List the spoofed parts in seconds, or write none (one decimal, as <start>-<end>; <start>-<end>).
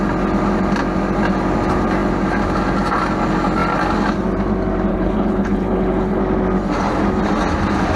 4.9-6.2